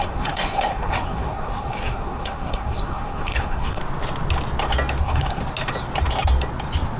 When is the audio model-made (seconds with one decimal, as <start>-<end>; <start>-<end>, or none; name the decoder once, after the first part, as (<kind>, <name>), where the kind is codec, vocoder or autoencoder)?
0.0-3.8 (codec, SNAC); 5.0-5.4